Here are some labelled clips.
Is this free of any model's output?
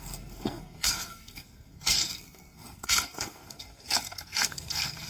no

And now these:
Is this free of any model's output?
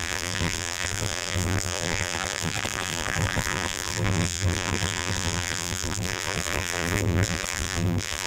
no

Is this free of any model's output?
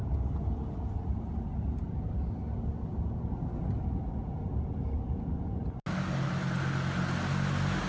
yes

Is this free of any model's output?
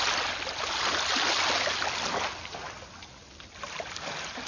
yes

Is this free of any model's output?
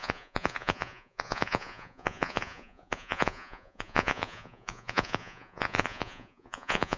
no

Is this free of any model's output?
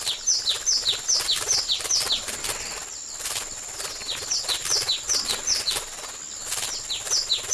yes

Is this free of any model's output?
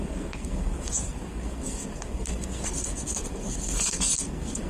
no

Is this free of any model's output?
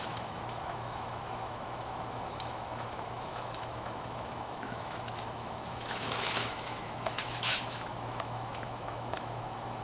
no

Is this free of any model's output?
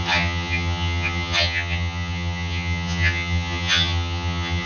no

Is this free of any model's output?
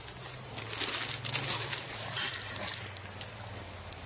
yes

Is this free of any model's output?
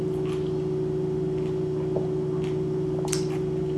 yes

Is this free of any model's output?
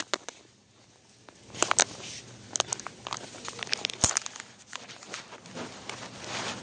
yes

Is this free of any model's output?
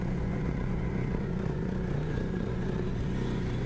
no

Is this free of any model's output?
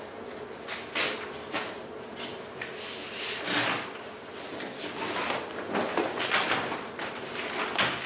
yes